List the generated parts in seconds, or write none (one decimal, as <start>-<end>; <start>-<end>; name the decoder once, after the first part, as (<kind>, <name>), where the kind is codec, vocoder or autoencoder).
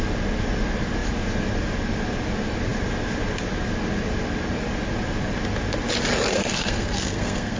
6.3-7.6 (codec, SNAC)